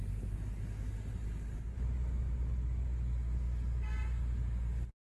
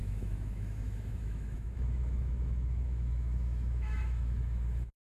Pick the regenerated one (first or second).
second